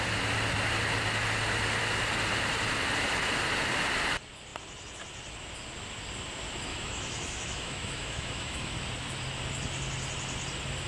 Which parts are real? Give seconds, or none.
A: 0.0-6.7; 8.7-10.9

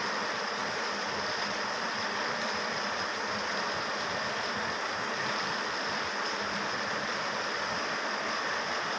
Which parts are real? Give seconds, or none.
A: 0.0-9.0

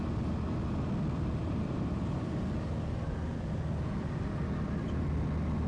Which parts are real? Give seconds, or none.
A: 0.0-1.4; 2.2-5.7

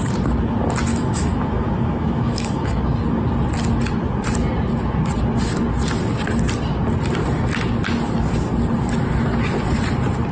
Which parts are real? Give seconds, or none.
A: 0.0-0.9; 2.8-10.3